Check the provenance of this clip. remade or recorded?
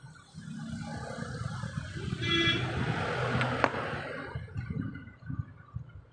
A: recorded